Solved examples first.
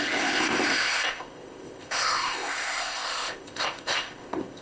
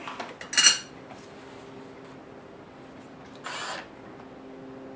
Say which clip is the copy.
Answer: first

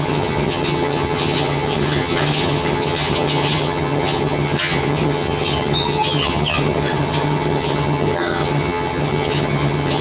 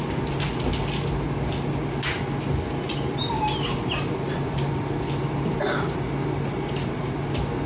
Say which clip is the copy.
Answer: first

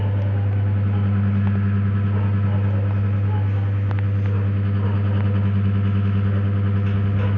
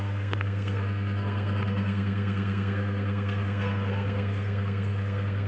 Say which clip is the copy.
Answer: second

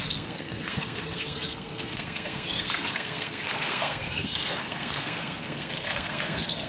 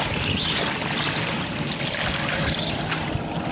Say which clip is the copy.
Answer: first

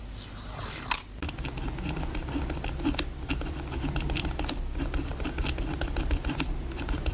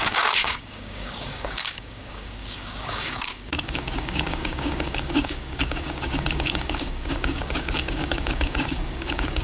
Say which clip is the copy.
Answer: second